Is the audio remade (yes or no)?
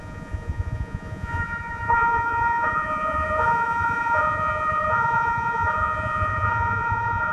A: yes